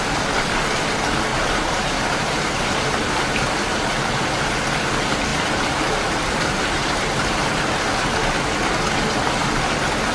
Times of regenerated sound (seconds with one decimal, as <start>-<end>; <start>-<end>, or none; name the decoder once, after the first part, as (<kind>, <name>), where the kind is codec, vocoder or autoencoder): 1.3-4.5 (vocoder, BigVGAN v2); 5.3-7.5